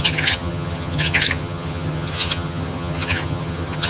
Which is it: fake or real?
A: fake